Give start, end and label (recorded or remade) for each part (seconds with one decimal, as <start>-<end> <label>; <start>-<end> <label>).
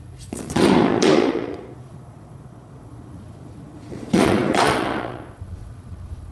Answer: 0.0-6.3 remade